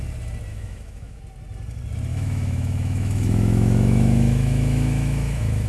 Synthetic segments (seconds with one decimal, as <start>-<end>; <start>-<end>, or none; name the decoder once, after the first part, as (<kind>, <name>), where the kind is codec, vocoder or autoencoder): 0.5-1.2 (autoencoder, DAC-VAE); 2.1-5.7